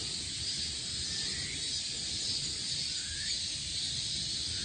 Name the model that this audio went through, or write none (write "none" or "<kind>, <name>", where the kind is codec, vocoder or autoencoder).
none